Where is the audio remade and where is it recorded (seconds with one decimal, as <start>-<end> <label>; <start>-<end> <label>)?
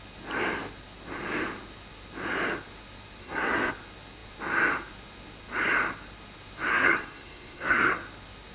0.0-3.2 recorded; 3.2-3.7 remade; 3.7-6.7 recorded; 6.7-7.9 remade; 7.9-8.5 recorded